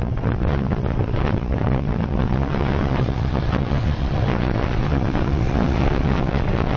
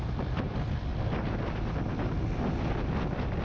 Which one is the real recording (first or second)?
second